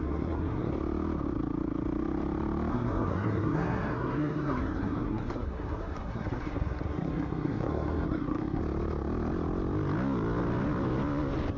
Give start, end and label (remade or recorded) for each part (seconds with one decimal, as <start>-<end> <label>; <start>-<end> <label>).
0.0-0.7 remade; 0.7-2.7 recorded; 2.7-8.6 remade; 8.6-11.6 recorded